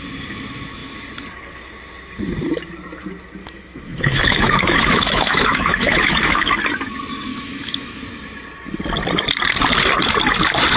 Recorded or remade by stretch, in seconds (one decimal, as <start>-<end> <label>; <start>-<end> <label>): 0.0-3.4 recorded; 3.4-6.5 remade; 6.5-7.3 recorded; 7.3-8.0 remade; 8.0-10.8 recorded

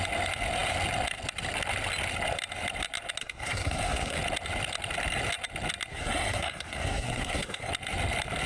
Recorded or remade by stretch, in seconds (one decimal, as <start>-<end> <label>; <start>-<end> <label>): 0.0-3.2 recorded; 3.2-4.2 remade; 4.2-5.9 recorded; 5.9-7.7 remade; 7.7-8.5 recorded

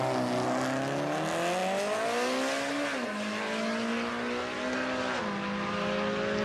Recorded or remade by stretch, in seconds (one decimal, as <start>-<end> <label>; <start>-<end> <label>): 0.0-6.4 recorded

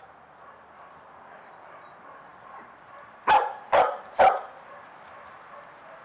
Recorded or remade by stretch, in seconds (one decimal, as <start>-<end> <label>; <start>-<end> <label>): 0.0-2.3 recorded; 2.3-3.8 remade; 3.8-6.0 recorded

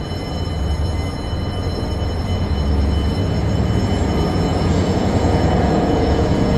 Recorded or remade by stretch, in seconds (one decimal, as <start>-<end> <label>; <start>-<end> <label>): 0.0-4.5 recorded; 4.5-6.6 remade